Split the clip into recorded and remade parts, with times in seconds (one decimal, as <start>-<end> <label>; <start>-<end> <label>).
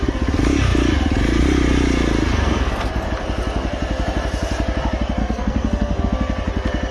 0.0-2.3 recorded; 2.3-2.9 remade; 2.9-5.2 recorded; 5.2-6.0 remade; 6.0-6.9 recorded